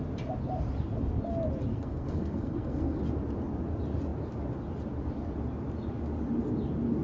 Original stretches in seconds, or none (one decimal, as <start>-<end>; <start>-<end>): 0.0-1.7; 3.0-7.0